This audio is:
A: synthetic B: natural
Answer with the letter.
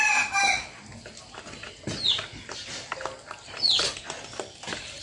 B